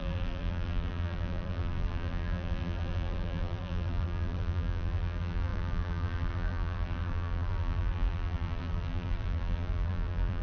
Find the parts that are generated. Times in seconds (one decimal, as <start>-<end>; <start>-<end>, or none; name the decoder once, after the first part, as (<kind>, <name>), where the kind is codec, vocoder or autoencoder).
0.0-10.4 (vocoder, BigVGAN v2)